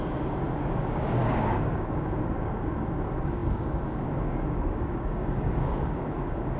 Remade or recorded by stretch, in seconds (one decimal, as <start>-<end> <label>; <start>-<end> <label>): 0.0-6.6 remade